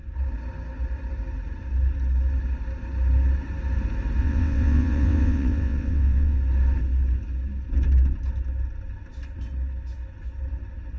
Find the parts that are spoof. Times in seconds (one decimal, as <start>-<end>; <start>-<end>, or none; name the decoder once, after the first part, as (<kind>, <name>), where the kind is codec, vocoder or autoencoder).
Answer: 4.2-6.4 (vocoder, WaveNeXt)